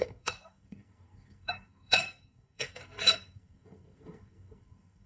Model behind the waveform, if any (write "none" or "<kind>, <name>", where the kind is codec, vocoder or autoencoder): codec, SNAC